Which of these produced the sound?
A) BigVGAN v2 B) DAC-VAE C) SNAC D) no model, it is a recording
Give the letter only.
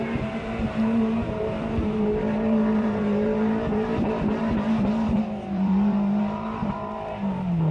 A